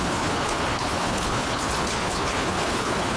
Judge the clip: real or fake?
fake